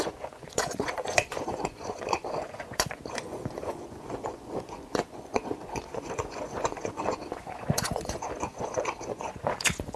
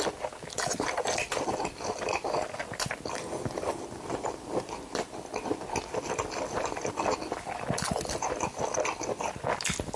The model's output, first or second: first